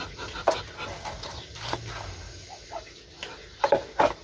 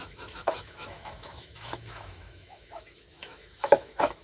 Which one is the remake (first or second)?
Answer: second